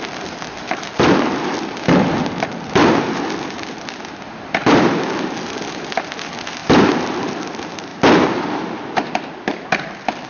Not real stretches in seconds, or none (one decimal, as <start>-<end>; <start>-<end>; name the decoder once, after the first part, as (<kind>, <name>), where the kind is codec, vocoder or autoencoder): 0.0-7.9 (vocoder, BigVGAN v2)

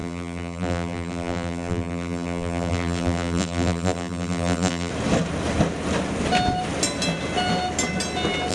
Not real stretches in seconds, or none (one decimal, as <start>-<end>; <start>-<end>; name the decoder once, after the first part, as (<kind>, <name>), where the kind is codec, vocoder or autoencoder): 0.0-4.9 (vocoder, BigVGAN v2)

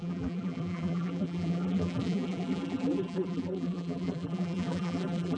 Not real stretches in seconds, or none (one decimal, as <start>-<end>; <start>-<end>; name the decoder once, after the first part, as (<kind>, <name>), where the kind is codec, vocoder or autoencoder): 0.0-5.4 (vocoder, BigVGAN v2)

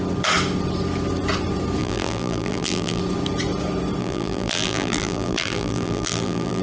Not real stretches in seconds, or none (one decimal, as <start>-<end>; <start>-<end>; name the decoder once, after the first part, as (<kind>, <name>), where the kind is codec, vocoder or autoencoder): 1.8-3.0 (vocoder, BigVGAN v2); 4.0-6.6

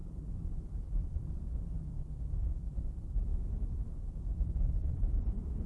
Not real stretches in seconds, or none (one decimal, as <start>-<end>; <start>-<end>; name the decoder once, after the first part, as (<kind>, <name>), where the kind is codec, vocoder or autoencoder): 0.0-5.7 (vocoder, BigVGAN v2)